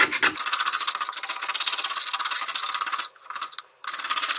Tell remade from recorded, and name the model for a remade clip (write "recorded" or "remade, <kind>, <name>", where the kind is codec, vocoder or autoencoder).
recorded